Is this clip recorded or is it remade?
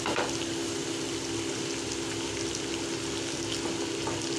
recorded